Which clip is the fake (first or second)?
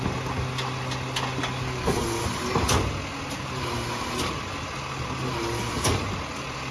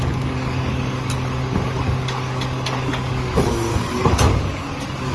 second